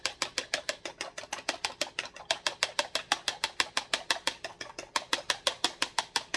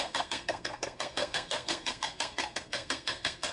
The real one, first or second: first